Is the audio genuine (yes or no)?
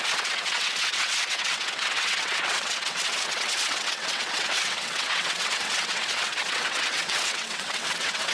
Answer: no